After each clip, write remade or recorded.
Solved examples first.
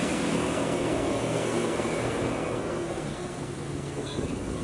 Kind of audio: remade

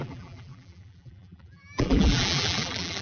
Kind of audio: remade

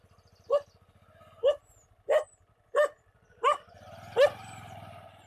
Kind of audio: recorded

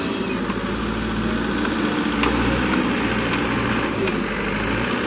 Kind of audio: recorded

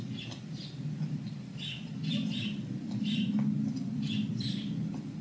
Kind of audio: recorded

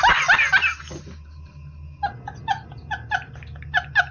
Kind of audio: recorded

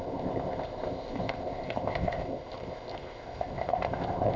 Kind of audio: remade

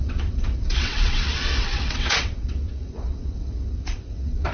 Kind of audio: remade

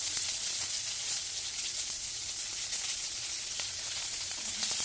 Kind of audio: remade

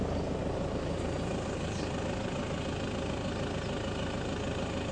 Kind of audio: recorded